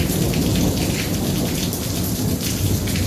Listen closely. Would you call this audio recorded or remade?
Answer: recorded